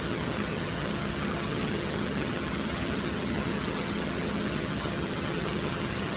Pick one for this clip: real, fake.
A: fake